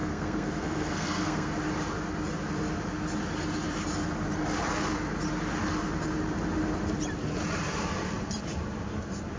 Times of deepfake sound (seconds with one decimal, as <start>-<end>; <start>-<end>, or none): 0.0-1.5